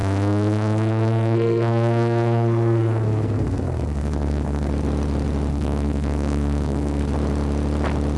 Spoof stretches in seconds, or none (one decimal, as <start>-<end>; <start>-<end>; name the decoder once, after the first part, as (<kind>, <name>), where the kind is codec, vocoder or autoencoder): 0.0-4.7 (codec, SNAC); 5.5-7.0